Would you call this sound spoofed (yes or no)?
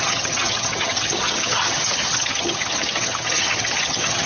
yes